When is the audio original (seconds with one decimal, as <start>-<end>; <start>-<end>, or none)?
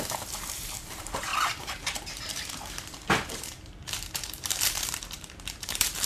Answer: none